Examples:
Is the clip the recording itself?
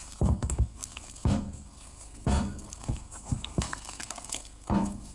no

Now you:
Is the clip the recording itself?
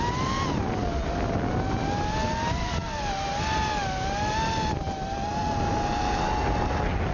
yes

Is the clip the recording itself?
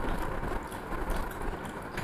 yes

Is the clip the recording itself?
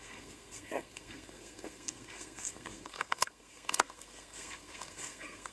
no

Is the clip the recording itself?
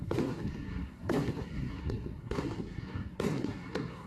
no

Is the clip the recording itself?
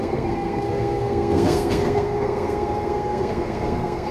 no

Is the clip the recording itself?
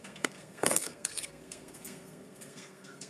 no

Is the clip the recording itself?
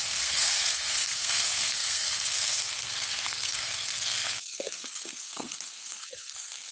no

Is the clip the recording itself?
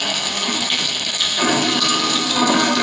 no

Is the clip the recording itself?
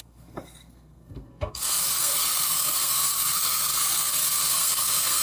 no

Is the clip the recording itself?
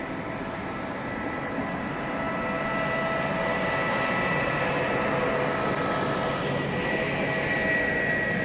yes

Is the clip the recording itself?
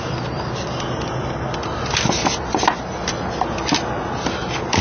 yes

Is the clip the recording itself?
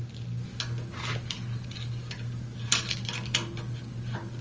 yes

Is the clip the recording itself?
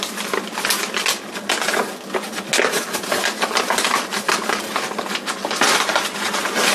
yes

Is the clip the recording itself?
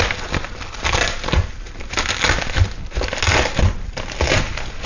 yes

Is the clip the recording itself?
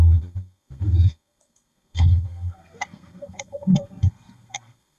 no